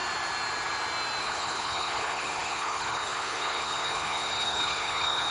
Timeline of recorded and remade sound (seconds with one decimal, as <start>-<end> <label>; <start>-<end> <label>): 0.0-1.2 recorded; 1.2-5.3 remade